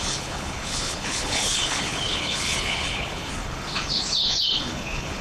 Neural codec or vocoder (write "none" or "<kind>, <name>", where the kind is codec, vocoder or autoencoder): codec, HILCodec